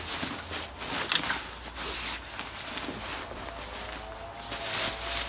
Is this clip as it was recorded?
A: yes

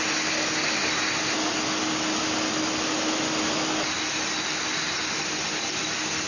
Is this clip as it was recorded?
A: yes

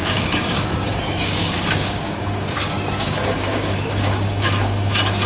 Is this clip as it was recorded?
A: no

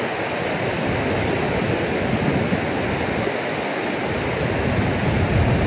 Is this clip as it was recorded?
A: yes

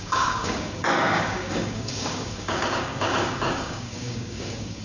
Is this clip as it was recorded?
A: no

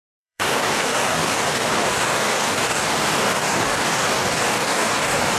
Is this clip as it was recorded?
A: no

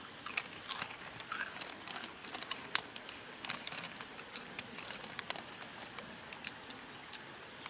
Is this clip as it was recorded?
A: yes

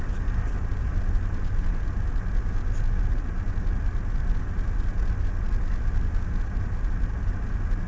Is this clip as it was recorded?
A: yes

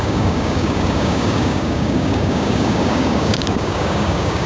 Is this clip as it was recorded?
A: no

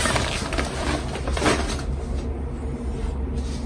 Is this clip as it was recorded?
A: yes